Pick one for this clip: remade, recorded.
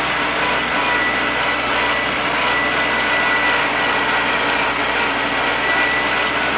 recorded